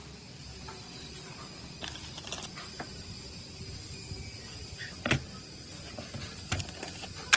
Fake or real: real